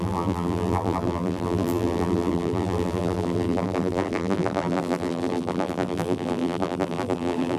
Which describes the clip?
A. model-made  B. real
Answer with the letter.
A